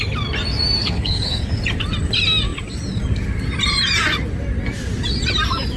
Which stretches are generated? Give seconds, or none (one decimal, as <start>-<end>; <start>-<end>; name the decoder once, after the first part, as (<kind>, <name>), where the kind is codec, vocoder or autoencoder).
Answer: 0.8-1.6 (codec, HILCodec)